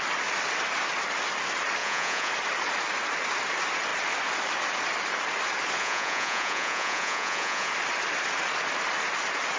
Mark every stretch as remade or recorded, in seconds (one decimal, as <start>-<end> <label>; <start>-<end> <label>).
0.0-1.8 recorded; 1.8-2.3 remade; 2.3-5.8 recorded; 5.8-7.7 remade; 7.7-9.6 recorded